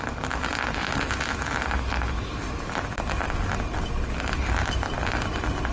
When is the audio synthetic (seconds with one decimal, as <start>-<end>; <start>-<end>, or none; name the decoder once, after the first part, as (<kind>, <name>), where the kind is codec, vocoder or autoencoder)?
none